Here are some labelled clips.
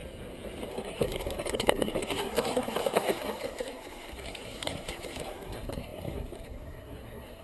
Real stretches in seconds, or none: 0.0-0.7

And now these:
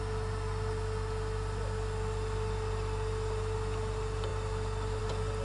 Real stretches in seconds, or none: 0.0-5.4

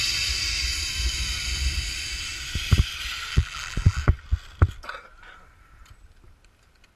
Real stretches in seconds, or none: 0.0-3.3; 4.0-7.0

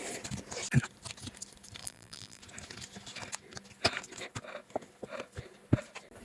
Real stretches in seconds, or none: 0.0-1.8; 2.4-6.2

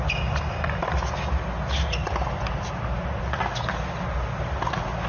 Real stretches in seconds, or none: 0.0-5.1

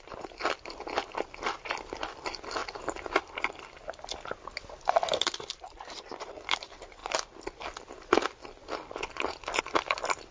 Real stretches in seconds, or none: 2.6-4.9; 7.0-9.6